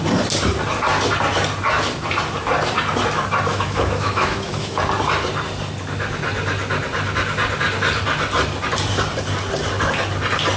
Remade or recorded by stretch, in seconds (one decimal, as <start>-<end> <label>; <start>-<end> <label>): 0.0-3.5 recorded; 3.5-4.8 remade; 4.8-10.6 recorded

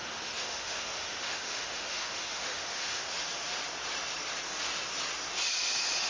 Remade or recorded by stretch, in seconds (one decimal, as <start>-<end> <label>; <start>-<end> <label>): 0.0-3.1 remade; 3.1-6.1 recorded

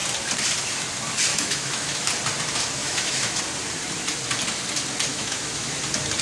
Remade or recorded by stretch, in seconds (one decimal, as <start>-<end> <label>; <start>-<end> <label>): 0.0-1.3 recorded; 1.3-2.1 remade; 2.1-2.8 recorded; 2.8-3.4 remade; 3.4-5.1 recorded; 5.1-5.8 remade; 5.8-6.2 recorded

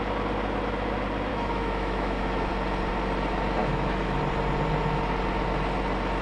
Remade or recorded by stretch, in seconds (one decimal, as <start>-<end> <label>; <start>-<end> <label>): 0.0-1.3 recorded; 1.3-2.5 remade; 2.5-3.6 recorded; 3.6-4.2 remade; 4.2-6.2 recorded

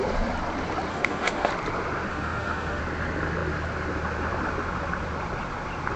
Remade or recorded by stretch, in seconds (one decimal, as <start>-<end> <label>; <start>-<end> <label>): 0.0-0.9 recorded; 0.9-1.5 remade; 1.5-2.1 recorded; 2.1-2.8 remade; 2.8-6.0 recorded

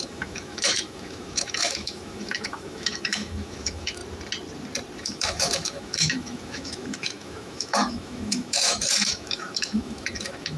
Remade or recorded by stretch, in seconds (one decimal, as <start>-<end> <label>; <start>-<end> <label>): 0.0-4.0 remade; 4.0-5.0 recorded; 5.0-10.6 remade

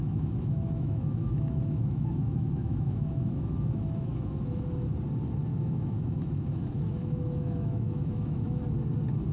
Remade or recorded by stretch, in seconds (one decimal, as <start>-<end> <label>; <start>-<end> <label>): 0.0-4.6 remade; 4.6-5.5 recorded; 5.5-6.6 remade; 6.6-7.0 recorded; 7.0-8.6 remade; 8.6-9.3 recorded